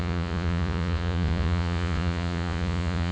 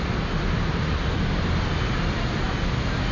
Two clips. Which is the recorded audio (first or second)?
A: second